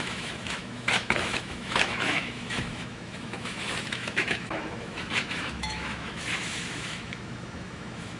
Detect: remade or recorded remade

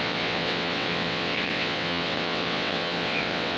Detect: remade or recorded remade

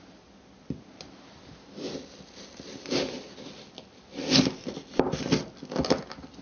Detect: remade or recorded recorded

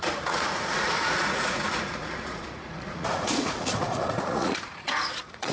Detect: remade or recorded remade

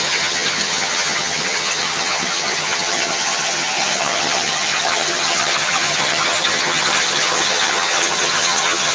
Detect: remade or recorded remade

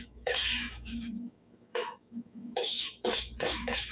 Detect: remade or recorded remade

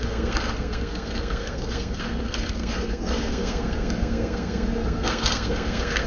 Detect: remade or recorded remade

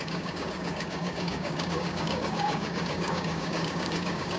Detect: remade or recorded remade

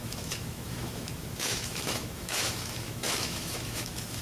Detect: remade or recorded remade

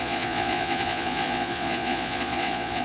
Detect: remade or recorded remade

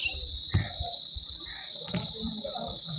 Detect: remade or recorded recorded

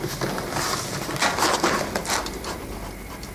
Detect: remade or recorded recorded